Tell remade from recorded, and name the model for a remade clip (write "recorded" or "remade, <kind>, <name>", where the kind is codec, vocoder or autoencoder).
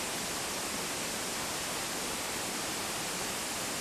recorded